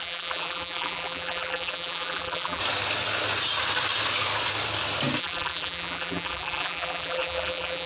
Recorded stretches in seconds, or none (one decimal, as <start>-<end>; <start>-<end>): 2.6-5.2